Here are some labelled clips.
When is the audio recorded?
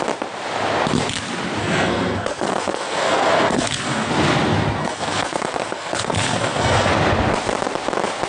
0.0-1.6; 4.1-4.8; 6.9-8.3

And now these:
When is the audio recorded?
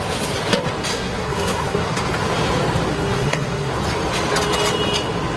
0.0-0.9; 2.0-2.9; 3.7-5.4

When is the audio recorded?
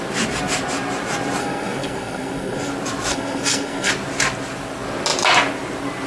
0.0-1.4; 2.7-3.1; 3.9-6.1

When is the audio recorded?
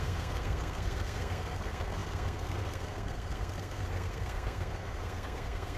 none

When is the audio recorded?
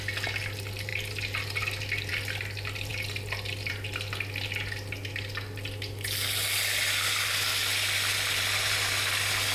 0.0-9.5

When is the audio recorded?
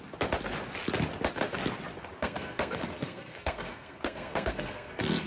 0.0-2.2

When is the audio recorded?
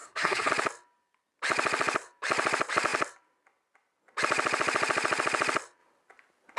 0.5-6.6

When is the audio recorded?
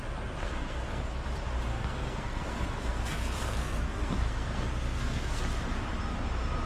0.0-0.4; 1.2-1.7; 5.4-6.7